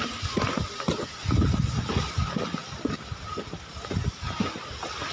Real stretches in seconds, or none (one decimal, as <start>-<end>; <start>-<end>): 0.0-5.1